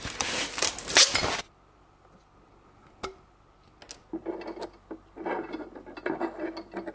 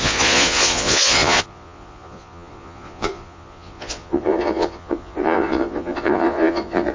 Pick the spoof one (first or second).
second